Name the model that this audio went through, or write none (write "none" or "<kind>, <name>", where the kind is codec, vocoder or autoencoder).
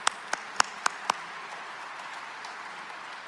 none